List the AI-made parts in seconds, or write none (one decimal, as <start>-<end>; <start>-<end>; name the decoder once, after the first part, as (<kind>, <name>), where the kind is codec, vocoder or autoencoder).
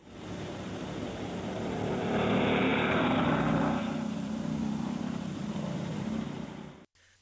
0.0-1.5 (vocoder, BigVGAN v2); 2.7-6.7